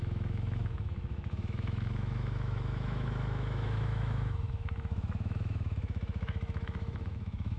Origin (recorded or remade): remade